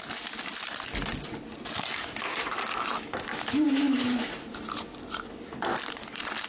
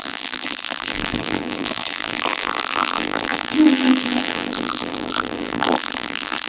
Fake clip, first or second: second